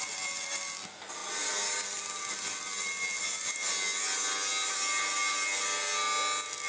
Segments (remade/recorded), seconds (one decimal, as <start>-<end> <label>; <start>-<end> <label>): 0.0-6.7 recorded